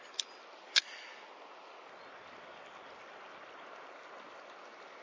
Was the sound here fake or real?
real